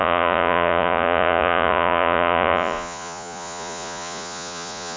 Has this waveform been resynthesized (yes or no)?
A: yes